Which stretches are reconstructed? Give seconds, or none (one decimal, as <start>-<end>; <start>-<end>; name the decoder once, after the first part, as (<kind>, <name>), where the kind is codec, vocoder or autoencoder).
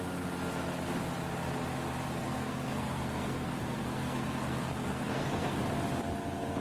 2.2-5.6 (codec, SNAC)